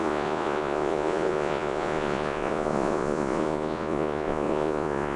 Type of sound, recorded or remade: remade